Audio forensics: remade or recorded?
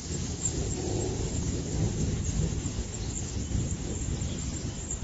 recorded